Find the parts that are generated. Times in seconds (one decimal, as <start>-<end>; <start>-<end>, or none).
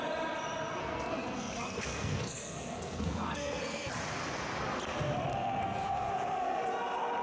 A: 0.8-3.9; 5.3-6.6